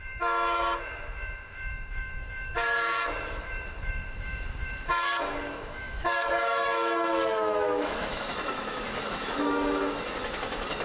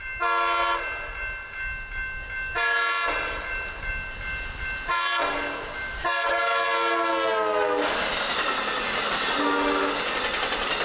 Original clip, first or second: second